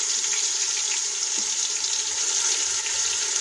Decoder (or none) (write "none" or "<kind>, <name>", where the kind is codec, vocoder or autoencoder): none